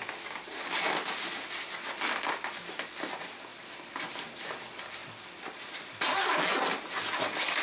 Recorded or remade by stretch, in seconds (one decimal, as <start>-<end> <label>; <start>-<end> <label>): 0.0-5.0 recorded; 5.0-5.9 remade; 5.9-7.6 recorded

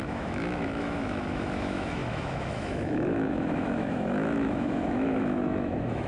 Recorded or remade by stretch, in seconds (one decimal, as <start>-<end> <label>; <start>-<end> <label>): 0.0-6.1 remade

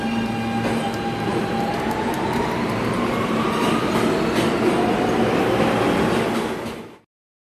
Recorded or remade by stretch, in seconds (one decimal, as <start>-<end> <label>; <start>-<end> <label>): 0.0-1.3 recorded; 1.3-3.7 remade; 3.7-7.5 recorded

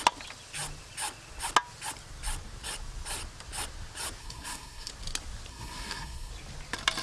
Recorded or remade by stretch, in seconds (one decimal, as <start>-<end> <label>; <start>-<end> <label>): 0.0-4.2 recorded; 4.2-4.9 remade; 4.9-5.5 recorded; 5.5-6.3 remade; 6.3-7.0 recorded

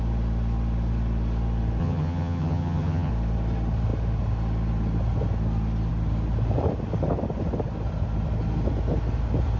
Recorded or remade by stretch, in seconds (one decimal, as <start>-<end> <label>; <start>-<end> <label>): 0.0-1.8 recorded; 1.8-3.1 remade; 3.1-9.6 recorded

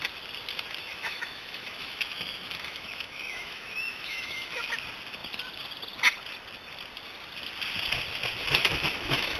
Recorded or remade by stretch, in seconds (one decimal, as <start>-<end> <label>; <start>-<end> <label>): 0.0-0.9 recorded; 0.9-4.7 remade; 4.7-8.6 recorded; 8.6-9.4 remade

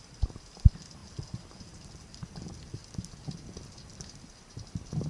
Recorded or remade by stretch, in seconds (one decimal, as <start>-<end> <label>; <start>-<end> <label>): 0.0-5.1 recorded

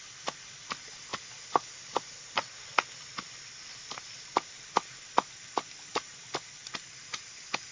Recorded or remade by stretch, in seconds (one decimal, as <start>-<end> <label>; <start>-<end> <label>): 0.0-6.6 recorded; 6.6-7.1 remade; 7.1-7.7 recorded